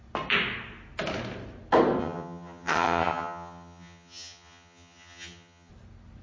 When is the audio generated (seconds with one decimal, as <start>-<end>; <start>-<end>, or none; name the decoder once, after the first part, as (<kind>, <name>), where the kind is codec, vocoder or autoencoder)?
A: 2.0-5.7 (vocoder, HiFi-GAN)